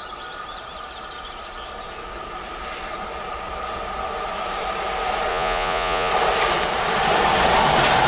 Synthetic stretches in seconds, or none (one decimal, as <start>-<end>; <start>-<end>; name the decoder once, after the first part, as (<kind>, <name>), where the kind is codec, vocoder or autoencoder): 5.3-6.1 (vocoder, Vocos)